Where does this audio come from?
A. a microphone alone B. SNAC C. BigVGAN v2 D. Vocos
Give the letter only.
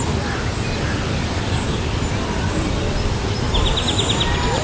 A